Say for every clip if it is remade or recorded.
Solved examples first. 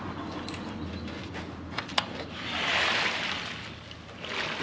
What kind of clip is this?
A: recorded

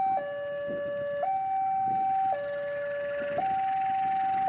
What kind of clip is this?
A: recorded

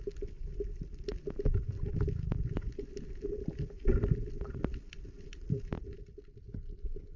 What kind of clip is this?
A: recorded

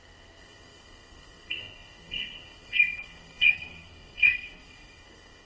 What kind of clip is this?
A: remade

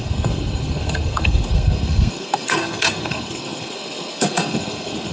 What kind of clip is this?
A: remade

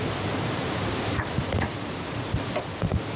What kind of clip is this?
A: recorded